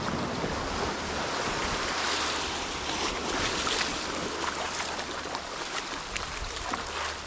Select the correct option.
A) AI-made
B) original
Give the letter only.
B